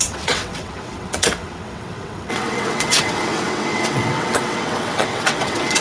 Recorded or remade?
remade